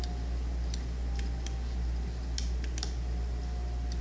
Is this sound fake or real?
real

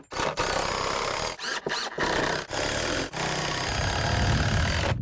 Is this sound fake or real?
real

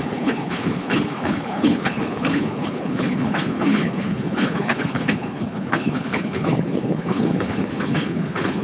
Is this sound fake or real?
fake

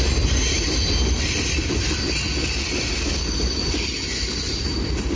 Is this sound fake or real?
real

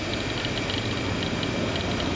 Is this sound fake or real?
real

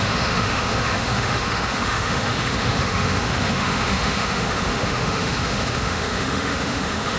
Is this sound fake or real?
fake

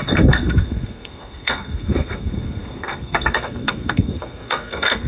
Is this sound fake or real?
fake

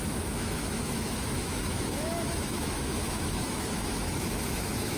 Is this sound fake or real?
fake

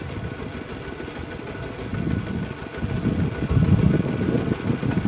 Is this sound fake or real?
real